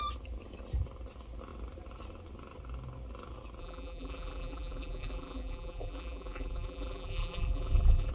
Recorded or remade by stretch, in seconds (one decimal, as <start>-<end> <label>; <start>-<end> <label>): 0.0-3.6 recorded; 3.6-8.1 remade